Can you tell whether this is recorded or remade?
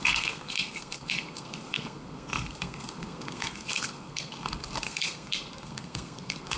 remade